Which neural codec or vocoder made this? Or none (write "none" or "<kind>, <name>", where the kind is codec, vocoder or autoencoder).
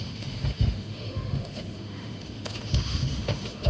autoencoder, DAC-VAE